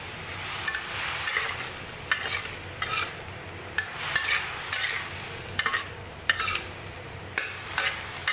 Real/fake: real